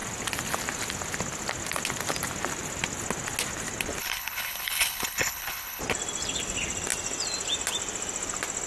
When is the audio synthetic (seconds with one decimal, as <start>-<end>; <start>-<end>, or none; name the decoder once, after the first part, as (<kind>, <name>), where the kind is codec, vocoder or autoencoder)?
4.0-5.8 (codec, HILCodec)